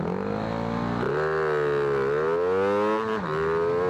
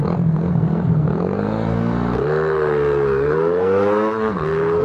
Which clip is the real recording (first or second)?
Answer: first